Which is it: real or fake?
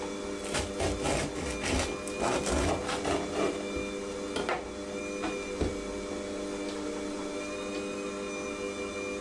real